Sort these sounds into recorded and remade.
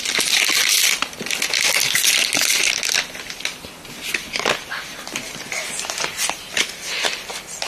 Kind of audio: recorded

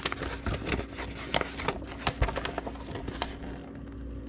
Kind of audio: recorded